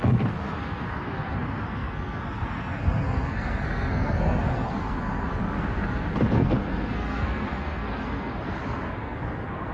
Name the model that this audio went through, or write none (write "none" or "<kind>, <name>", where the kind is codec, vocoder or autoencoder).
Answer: codec, SNAC